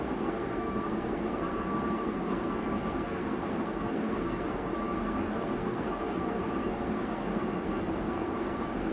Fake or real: fake